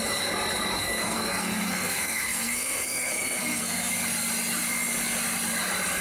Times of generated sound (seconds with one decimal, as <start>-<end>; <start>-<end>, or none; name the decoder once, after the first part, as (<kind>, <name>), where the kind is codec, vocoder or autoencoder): 0.8-3.9 (codec, SNAC)